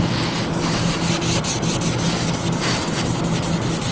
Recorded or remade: recorded